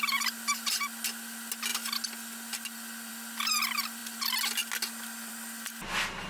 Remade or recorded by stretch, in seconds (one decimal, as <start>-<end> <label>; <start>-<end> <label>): 0.0-6.3 recorded